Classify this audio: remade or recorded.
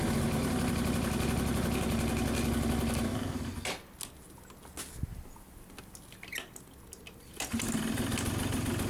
recorded